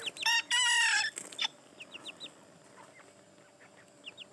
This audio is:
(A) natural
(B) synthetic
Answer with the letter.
A